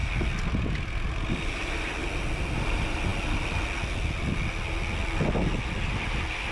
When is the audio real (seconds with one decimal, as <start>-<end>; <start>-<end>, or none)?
0.0-1.3; 2.0-2.5; 3.1-5.6